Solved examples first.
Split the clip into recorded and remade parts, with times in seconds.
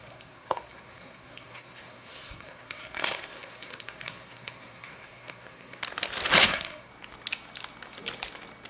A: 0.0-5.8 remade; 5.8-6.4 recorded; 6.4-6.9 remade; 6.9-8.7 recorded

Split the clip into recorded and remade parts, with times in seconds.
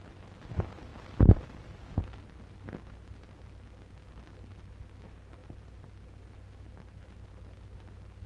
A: 0.0-8.3 recorded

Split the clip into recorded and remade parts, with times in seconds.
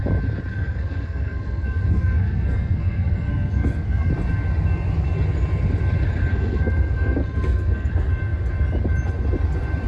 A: 0.0-0.5 recorded; 0.5-4.1 remade; 4.1-6.3 recorded; 6.3-7.9 remade; 7.9-9.9 recorded